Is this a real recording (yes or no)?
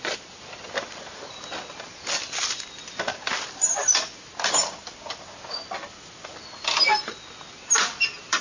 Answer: yes